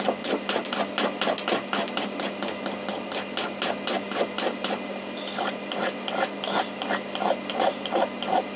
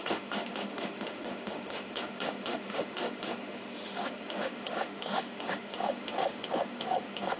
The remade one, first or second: second